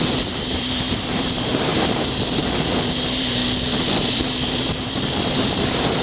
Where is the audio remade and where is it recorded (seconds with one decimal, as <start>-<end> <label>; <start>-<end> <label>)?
0.0-3.4 remade; 3.4-4.1 recorded; 4.1-6.0 remade